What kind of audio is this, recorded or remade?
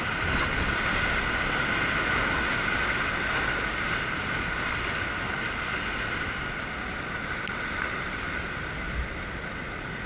recorded